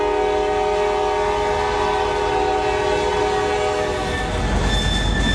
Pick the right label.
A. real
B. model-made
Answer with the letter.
A